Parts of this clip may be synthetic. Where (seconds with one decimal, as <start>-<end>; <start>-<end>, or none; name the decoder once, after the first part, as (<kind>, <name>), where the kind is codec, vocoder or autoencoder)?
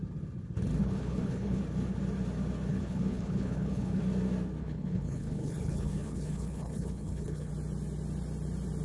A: 0.8-1.6 (codec, HILCodec); 2.7-4.0; 4.6-7.5